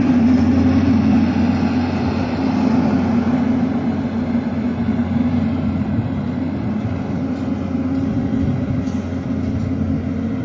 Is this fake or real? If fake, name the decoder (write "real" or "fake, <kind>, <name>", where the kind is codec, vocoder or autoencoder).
real